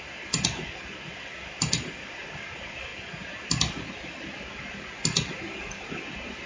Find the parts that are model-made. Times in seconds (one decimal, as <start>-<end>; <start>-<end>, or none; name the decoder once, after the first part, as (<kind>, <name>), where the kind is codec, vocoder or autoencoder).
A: none